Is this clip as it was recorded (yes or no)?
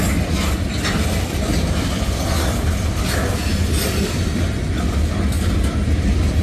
yes